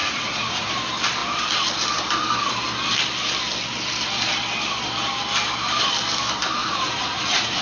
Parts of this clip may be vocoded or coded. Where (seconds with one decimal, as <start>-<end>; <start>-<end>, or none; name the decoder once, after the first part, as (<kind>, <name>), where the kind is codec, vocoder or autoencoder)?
0.0-0.7 (vocoder, Vocos); 6.6-7.6